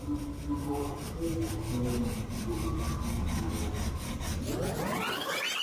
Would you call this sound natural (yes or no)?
yes